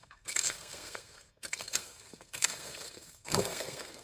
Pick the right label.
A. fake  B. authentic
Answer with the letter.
A